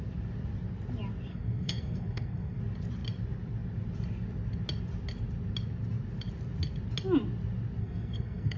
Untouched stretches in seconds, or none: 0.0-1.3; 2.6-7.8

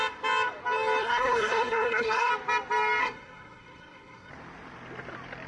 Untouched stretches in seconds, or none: 0.0-1.0; 2.3-3.0; 4.3-5.5